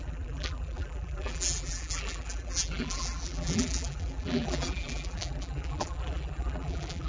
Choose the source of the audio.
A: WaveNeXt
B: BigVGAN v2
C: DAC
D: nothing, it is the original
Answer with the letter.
B